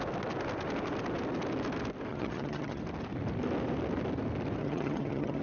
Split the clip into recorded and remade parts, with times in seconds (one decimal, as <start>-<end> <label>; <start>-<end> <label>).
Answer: 0.0-2.1 recorded; 2.1-2.8 remade; 2.8-4.6 recorded; 4.6-5.4 remade